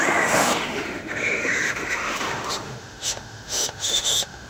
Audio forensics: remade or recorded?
remade